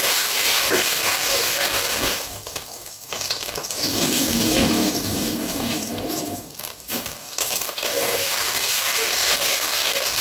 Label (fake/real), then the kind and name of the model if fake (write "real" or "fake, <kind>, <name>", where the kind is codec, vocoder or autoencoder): fake, codec, DAC